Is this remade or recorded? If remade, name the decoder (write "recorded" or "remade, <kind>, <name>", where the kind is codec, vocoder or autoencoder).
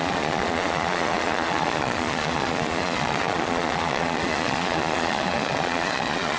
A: remade, vocoder, Vocos